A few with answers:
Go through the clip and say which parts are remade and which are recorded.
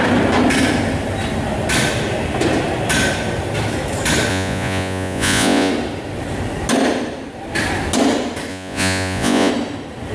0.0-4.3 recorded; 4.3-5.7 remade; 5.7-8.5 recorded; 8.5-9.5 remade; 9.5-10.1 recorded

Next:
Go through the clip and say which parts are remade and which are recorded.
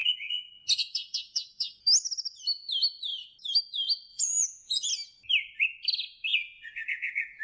0.0-0.5 remade; 0.5-4.1 recorded; 4.1-4.9 remade; 4.9-6.3 recorded; 6.3-7.4 remade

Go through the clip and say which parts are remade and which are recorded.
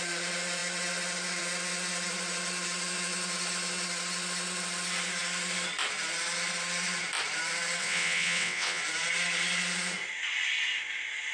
0.0-7.8 recorded; 7.8-8.8 remade; 8.8-11.3 recorded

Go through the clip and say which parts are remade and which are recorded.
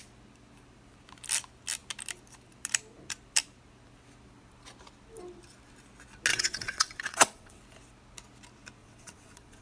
0.0-6.3 recorded; 6.3-7.6 remade; 7.6-8.8 recorded; 8.8-9.6 remade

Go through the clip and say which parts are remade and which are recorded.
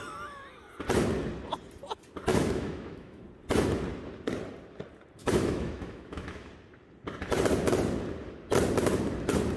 0.0-2.3 recorded; 2.3-3.2 remade; 3.2-5.2 recorded; 5.2-6.5 remade; 6.5-9.6 recorded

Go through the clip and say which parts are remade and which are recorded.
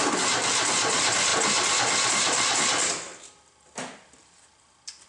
0.0-5.1 recorded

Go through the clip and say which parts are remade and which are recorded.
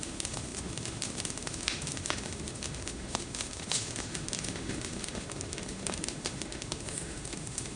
0.0-7.8 remade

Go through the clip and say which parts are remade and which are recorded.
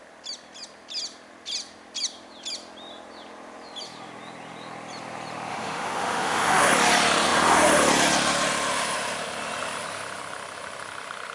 0.0-5.5 recorded; 5.5-6.7 remade; 6.7-11.3 recorded